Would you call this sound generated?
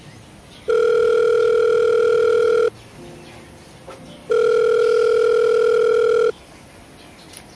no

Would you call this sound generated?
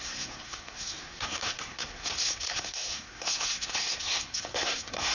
yes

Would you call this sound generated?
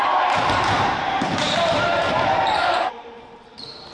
yes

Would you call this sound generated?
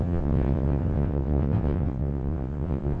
yes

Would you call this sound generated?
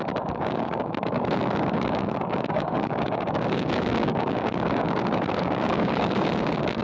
yes